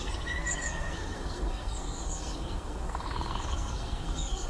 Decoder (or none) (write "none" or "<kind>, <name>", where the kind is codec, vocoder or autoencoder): codec, SNAC